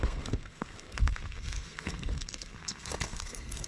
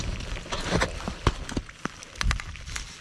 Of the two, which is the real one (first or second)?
second